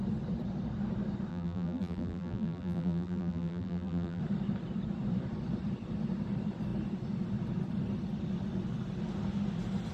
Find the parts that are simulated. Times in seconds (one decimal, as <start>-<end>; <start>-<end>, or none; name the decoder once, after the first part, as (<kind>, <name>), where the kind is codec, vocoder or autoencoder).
1.3-4.2 (vocoder, BigVGAN v2)